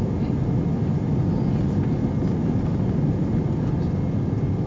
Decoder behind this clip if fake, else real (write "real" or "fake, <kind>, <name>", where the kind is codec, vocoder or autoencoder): real